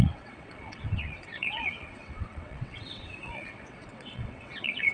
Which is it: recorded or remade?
remade